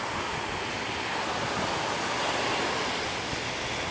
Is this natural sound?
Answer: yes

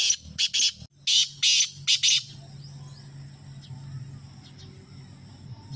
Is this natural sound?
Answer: yes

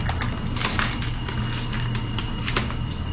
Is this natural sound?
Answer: yes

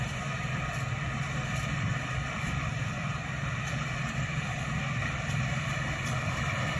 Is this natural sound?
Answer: no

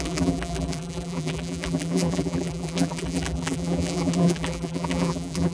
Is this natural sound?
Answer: no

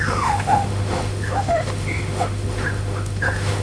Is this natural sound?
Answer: no